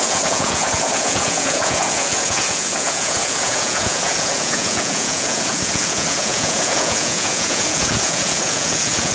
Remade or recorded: remade